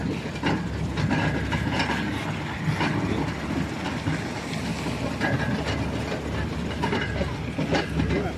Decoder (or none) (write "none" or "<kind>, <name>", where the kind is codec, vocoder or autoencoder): none